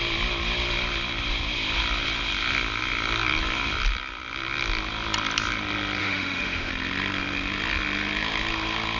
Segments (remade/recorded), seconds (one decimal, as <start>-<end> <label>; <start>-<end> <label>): 0.0-6.0 recorded; 6.0-6.7 remade; 6.7-9.0 recorded